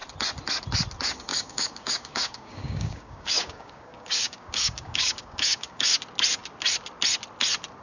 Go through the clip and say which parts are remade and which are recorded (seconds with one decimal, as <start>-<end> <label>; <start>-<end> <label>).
0.0-1.3 recorded; 1.3-6.0 remade; 6.0-7.8 recorded